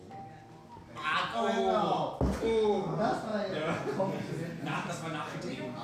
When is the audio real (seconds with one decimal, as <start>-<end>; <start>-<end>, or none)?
0.0-5.8